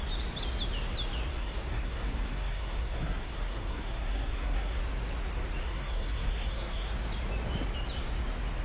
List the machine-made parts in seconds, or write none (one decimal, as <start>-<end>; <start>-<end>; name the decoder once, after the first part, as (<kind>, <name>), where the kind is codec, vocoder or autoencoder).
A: 1.3-4.8 (codec, SNAC); 5.6-6.9